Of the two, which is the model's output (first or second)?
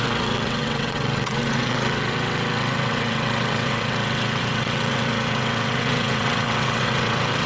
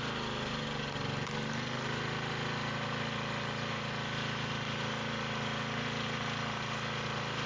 first